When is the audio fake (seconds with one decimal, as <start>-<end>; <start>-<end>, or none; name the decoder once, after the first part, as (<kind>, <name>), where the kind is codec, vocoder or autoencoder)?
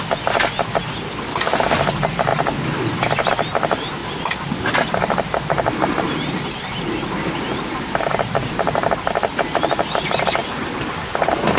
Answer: none